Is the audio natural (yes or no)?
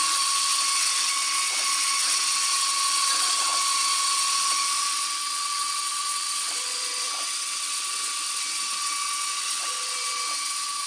no